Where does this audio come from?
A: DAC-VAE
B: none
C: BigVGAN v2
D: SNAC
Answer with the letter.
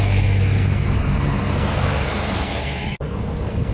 D